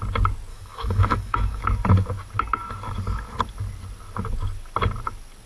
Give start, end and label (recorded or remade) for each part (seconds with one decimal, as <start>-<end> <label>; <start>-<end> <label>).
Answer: 0.0-0.5 recorded; 0.5-1.6 remade; 1.6-5.5 recorded